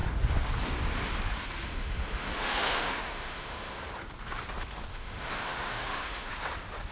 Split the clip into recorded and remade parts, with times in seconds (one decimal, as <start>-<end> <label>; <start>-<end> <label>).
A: 0.0-1.7 recorded; 1.7-3.8 remade; 3.8-4.9 recorded; 4.9-6.3 remade; 6.3-6.9 recorded